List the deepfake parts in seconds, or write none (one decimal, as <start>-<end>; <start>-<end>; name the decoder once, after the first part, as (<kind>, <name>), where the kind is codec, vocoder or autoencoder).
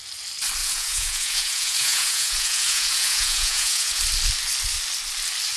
0.6-4.0 (vocoder, Vocos)